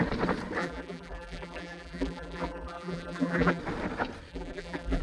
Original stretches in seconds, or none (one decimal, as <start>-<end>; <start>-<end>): 0.0-0.6; 3.6-4.3